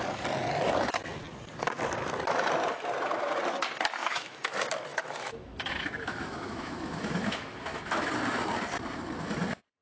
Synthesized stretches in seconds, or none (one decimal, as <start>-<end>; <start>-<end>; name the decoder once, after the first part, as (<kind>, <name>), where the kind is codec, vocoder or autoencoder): 4.0-4.5 (autoencoder, DAC-VAE); 4.9-8.1